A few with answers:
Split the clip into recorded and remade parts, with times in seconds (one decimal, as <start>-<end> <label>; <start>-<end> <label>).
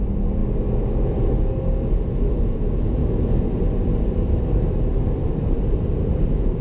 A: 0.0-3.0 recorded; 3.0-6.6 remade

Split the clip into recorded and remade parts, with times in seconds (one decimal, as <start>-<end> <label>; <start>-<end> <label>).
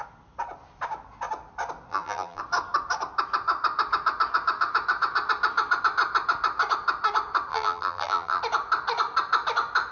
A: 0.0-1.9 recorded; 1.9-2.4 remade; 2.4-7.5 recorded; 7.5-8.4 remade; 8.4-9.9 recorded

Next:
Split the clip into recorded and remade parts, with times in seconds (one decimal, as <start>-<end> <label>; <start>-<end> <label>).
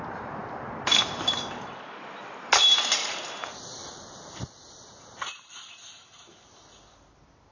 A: 0.0-0.4 recorded; 0.4-1.3 remade; 1.3-3.0 recorded; 3.0-6.5 remade; 6.5-7.5 recorded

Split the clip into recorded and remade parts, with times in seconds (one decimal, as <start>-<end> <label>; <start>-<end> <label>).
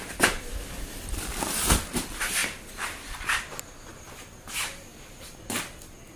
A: 0.0-2.4 remade; 2.4-3.1 recorded; 3.1-4.9 remade; 4.9-6.2 recorded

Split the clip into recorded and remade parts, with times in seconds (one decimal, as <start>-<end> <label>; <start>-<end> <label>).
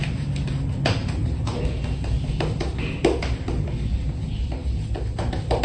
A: 0.0-1.0 recorded; 1.0-2.3 remade; 2.3-5.6 recorded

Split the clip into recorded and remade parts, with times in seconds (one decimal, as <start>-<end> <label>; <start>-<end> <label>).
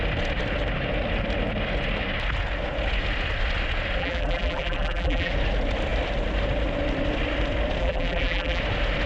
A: 0.0-4.0 recorded; 4.0-5.3 remade; 5.3-7.8 recorded; 7.8-8.6 remade; 8.6-9.1 recorded